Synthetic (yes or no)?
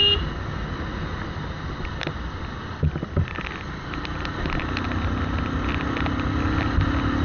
no